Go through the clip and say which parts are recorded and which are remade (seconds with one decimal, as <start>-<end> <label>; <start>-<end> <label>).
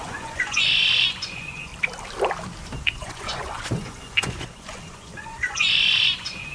0.0-1.7 remade; 1.7-2.8 recorded; 2.8-6.5 remade